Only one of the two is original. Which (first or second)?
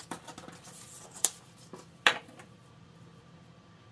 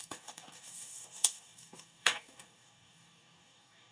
first